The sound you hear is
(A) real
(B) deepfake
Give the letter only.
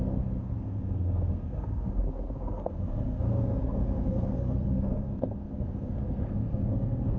B